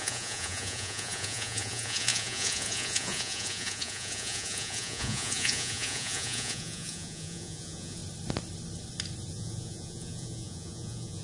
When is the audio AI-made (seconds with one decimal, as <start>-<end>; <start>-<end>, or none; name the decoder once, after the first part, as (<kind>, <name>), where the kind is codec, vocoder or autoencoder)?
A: 0.0-8.0 (vocoder, Vocos); 9.3-11.2